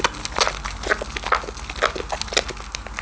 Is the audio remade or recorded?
recorded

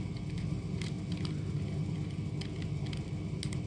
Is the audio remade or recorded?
recorded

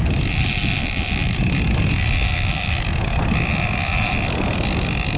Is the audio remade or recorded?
recorded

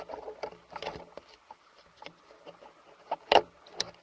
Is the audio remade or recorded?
recorded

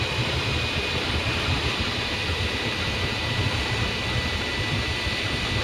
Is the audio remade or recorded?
recorded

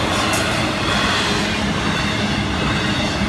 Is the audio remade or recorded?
recorded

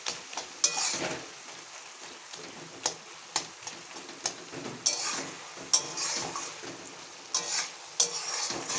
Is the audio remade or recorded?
recorded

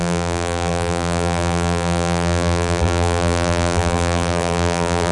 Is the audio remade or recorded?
remade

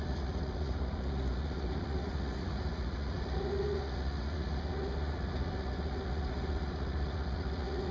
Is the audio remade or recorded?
remade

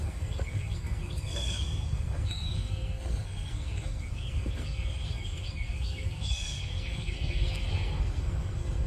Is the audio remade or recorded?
remade